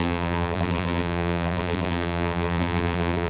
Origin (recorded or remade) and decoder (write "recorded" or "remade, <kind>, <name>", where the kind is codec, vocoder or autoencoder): remade, vocoder, BigVGAN v2